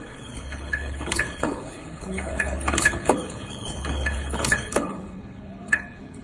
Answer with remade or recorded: remade